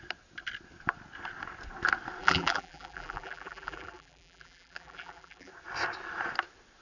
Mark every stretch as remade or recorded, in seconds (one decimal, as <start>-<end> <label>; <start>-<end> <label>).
0.0-2.2 recorded; 2.2-5.5 remade; 5.5-6.8 recorded